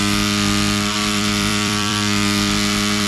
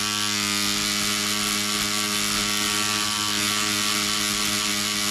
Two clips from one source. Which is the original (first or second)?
second